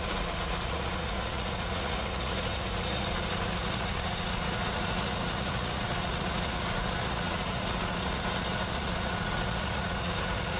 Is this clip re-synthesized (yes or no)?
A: yes